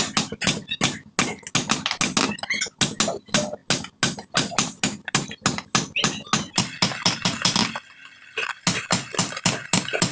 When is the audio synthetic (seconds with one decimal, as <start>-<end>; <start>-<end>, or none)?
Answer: none

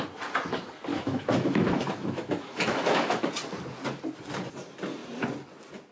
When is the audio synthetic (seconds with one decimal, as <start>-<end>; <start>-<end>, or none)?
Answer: 0.9-3.3

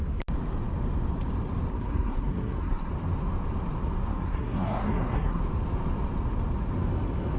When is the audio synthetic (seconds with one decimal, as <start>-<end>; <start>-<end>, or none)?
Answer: 1.7-2.9; 4.1-5.4

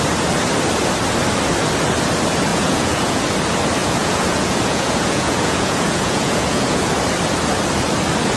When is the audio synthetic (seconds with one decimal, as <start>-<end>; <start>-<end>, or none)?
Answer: 2.5-3.2; 3.8-6.9

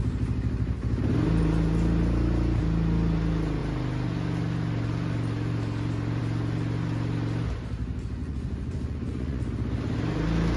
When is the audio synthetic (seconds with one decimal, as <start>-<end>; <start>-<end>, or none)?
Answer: 8.2-9.4

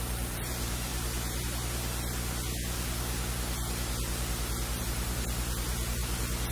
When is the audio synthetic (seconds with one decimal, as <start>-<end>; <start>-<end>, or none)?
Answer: 0.0-0.9; 4.8-6.0

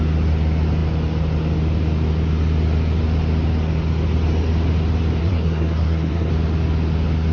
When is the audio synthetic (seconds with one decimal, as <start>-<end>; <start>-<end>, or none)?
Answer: 5.2-6.3

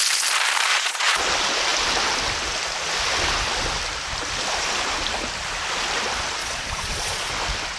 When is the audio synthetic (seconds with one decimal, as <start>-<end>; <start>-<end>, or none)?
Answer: 0.7-1.2; 6.4-7.3